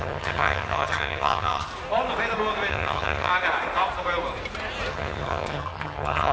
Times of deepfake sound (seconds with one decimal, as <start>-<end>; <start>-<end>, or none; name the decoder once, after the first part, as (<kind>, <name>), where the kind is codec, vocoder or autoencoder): 0.0-1.7 (vocoder, HiFi-GAN); 2.7-3.3; 4.9-6.3